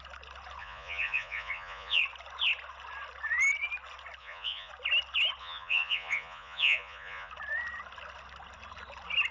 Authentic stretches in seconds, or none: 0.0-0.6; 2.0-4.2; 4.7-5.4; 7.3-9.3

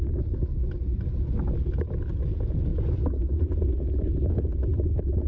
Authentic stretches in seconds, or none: 0.0-5.3